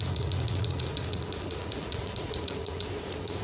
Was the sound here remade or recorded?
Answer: remade